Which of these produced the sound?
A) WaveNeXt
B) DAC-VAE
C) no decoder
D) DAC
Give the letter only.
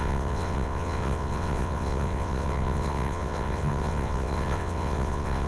A